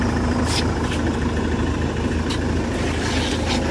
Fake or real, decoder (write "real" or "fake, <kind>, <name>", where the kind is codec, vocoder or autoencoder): real